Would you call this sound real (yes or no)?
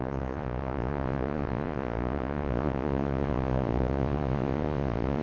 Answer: no